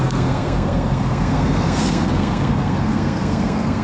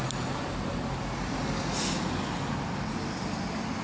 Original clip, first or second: second